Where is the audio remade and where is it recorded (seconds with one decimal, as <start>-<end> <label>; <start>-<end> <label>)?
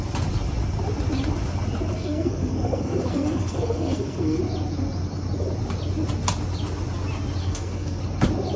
0.0-1.9 recorded; 1.9-4.4 remade; 4.4-7.4 recorded; 7.4-8.0 remade; 8.0-8.6 recorded